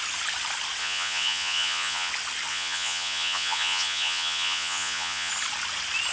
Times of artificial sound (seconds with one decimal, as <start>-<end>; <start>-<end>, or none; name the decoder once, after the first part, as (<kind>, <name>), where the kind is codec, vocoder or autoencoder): 0.8-2.1 (vocoder, Vocos); 2.5-5.3